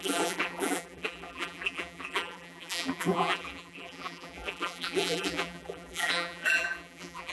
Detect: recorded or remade remade